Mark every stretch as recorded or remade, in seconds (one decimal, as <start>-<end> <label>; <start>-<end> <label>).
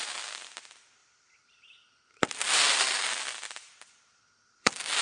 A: 0.0-1.0 recorded; 1.0-3.0 remade; 3.0-4.1 recorded; 4.1-5.0 remade